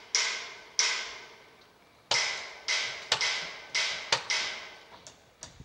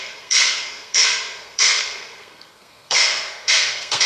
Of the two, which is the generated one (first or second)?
second